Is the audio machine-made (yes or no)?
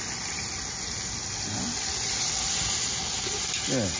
no